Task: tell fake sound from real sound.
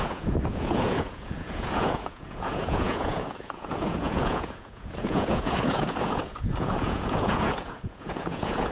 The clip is fake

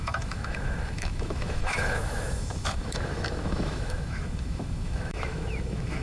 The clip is fake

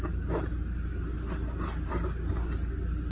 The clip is real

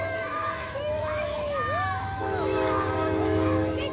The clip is fake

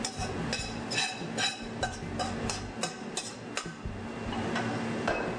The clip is real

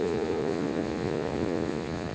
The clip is fake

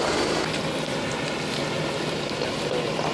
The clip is real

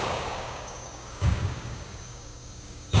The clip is fake